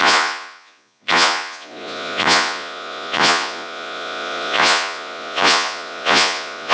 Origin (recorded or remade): remade